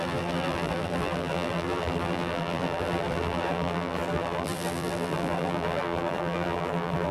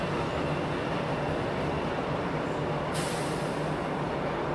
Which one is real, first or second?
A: second